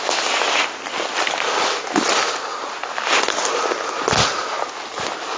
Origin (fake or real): real